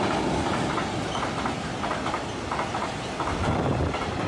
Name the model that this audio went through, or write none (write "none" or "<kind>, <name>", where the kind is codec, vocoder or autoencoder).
none